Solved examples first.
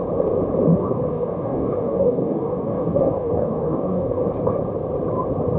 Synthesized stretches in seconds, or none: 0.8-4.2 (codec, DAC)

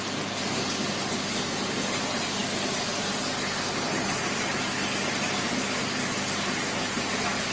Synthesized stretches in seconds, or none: none

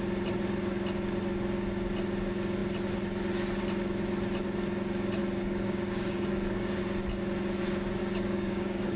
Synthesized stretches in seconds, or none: 5.2-6.8 (codec, DAC); 8.0-9.0